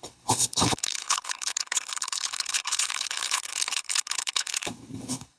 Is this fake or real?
fake